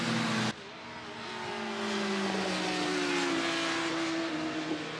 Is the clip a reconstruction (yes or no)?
no